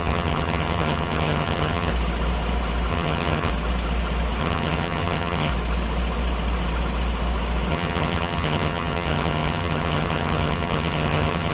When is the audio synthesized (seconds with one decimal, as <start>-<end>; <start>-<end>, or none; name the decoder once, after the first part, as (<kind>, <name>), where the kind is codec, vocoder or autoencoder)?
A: 0.0-1.9 (vocoder, HiFi-GAN); 2.9-3.5; 4.4-5.5; 7.7-11.5